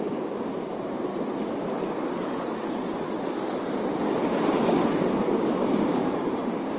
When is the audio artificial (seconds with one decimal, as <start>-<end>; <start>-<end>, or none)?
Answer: 0.0-1.1; 5.2-6.8